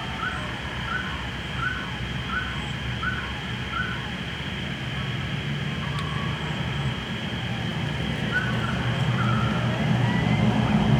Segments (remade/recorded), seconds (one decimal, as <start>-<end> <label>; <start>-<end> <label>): 0.0-11.0 recorded